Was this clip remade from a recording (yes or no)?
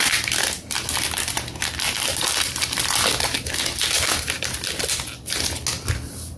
no